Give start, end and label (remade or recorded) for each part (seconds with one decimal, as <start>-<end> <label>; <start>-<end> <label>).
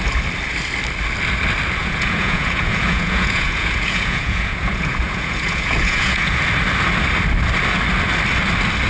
0.0-1.8 recorded; 1.8-6.4 remade; 6.4-8.9 recorded